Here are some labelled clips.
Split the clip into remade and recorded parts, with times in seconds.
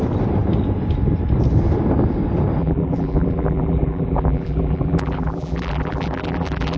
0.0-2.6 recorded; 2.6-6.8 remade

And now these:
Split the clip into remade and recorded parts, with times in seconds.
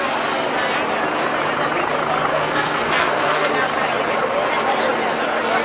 0.0-2.3 recorded; 2.3-3.5 remade; 3.5-5.6 recorded